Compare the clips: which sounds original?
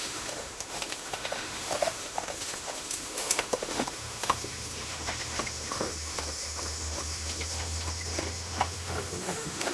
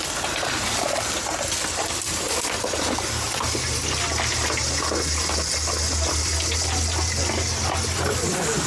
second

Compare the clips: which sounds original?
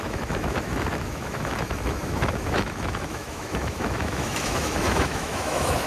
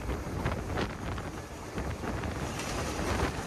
second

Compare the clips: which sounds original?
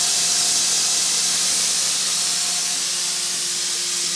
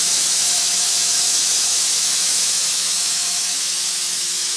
first